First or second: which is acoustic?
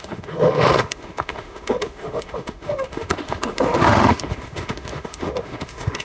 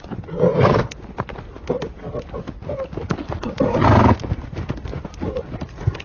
second